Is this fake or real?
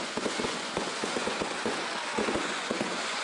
fake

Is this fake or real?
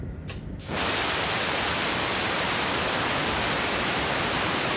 real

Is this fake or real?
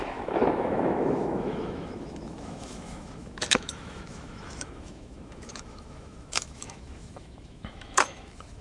fake